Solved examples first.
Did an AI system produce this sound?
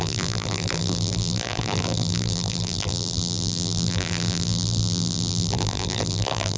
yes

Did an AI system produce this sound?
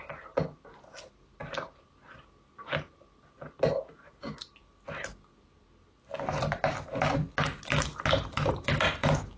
no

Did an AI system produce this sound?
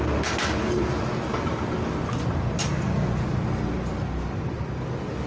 no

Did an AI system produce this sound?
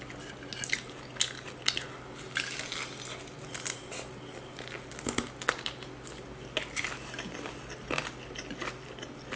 no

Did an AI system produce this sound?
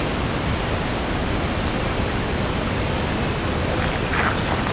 no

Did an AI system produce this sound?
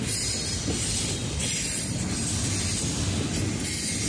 no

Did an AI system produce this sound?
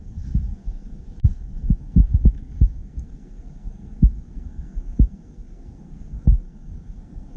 yes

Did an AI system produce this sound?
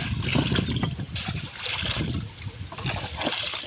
no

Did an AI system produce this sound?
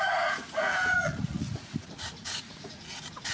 yes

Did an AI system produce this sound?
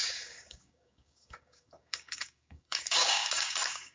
yes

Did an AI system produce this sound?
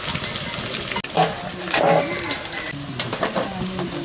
no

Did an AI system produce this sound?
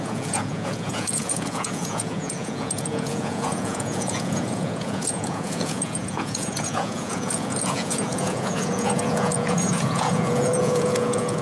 yes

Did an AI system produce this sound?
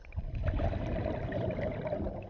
no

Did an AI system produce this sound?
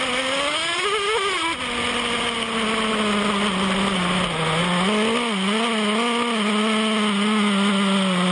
no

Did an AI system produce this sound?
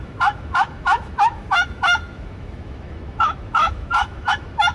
yes